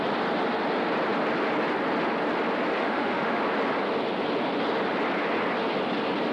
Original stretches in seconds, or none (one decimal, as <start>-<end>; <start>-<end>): 0.0-2.8; 3.4-6.3